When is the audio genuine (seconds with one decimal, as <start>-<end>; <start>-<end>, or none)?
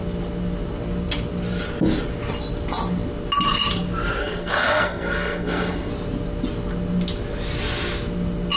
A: 0.0-4.2; 5.9-8.6